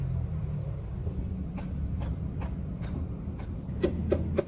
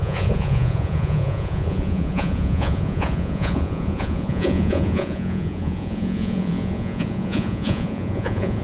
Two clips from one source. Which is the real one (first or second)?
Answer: first